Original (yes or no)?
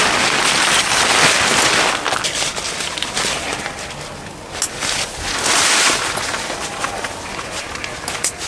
yes